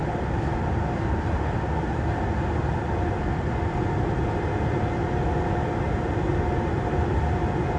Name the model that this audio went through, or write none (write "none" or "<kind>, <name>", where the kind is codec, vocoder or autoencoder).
none